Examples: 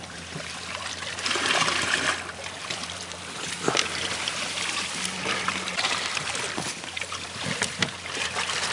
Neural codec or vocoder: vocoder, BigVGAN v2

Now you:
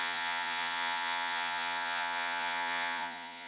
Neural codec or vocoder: vocoder, Vocos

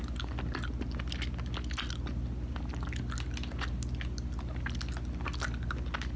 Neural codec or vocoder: none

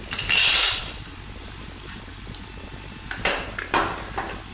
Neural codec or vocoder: none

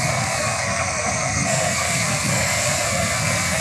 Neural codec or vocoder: codec, SNAC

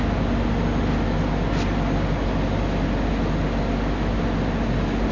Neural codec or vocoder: none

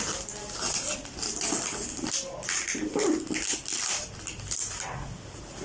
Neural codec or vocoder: none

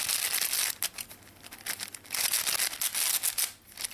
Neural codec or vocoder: none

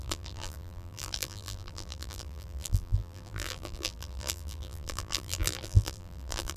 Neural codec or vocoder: vocoder, BigVGAN v2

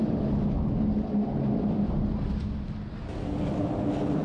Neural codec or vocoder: none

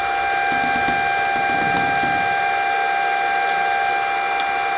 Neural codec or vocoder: none